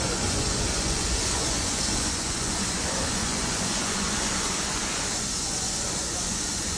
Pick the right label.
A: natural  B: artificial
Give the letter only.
B